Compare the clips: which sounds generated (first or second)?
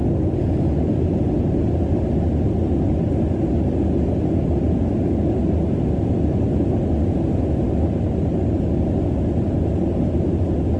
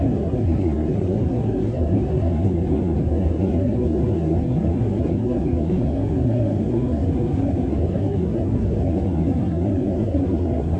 second